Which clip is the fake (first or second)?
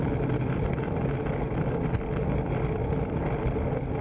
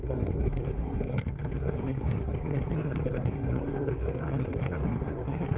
second